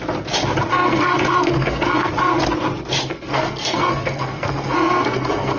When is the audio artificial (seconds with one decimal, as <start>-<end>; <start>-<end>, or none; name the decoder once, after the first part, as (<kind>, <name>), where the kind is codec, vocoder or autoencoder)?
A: 0.7-2.1 (codec, SNAC); 3.0-5.6